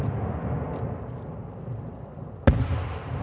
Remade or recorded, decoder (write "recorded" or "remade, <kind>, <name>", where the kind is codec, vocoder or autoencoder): recorded